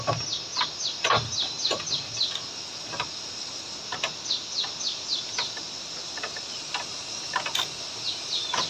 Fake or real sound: real